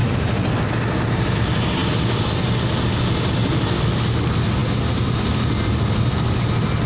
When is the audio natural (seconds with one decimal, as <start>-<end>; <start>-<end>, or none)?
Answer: 0.0-6.9